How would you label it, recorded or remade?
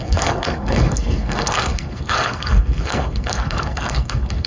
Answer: remade